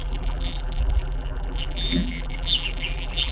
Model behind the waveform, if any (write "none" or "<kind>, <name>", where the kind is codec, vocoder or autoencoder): vocoder, BigVGAN v2